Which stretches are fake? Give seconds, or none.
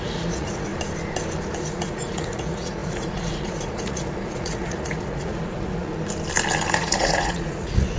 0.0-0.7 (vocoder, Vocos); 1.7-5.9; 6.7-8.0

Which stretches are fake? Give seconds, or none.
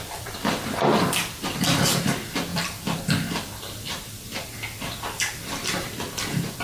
2.5-6.6 (vocoder, BigVGAN v2)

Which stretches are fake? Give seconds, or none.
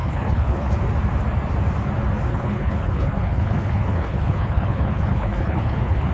0.0-0.7 (codec, HILCodec); 2.3-6.1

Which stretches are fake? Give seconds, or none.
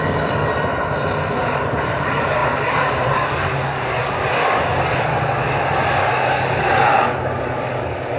0.0-0.5 (codec, DAC); 1.3-5.1; 5.8-8.2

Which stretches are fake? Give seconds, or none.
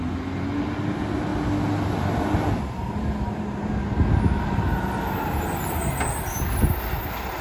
none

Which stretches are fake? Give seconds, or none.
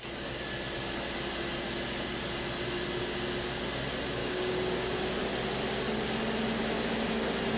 4.2-5.0 (codec, DAC)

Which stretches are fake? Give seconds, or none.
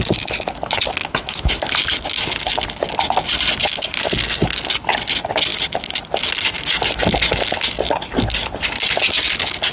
1.0-1.6 (autoencoder, DAC-VAE)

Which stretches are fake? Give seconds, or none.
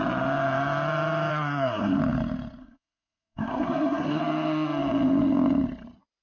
1.3-2.0 (codec, SNAC); 2.6-4.2